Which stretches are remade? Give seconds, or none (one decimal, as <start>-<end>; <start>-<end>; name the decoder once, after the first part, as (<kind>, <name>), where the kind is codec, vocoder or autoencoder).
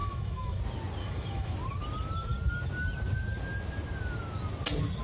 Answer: 0.0-0.6 (autoencoder, DAC-VAE); 1.0-1.5